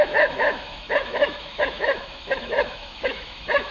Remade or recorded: remade